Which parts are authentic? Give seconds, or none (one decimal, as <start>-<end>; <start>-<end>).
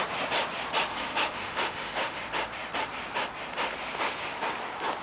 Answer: 0.0-0.9; 2.2-5.0